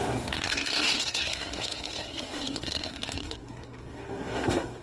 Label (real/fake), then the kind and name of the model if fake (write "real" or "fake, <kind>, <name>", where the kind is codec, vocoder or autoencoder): fake, codec, SNAC